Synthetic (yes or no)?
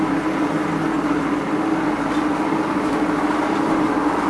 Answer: no